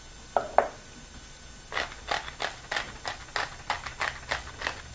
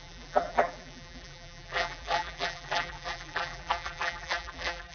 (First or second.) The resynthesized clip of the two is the second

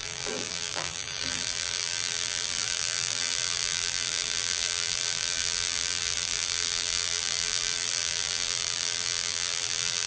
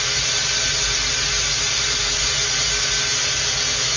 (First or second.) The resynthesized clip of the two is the first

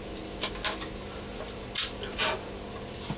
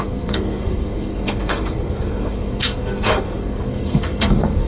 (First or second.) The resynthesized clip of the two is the second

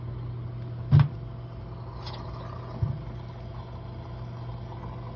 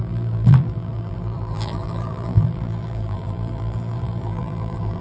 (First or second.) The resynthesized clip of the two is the second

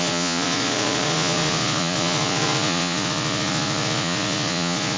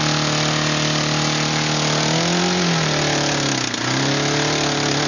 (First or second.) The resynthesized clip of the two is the first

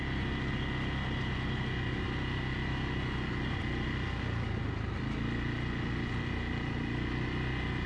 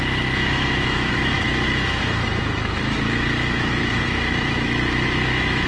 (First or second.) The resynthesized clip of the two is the second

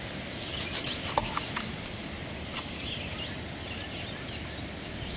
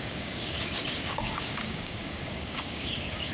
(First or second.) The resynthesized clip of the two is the second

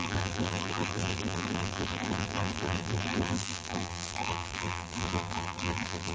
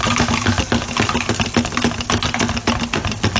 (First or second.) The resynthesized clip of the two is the first